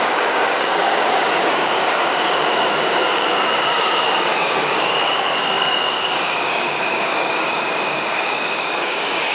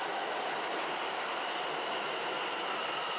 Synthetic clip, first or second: first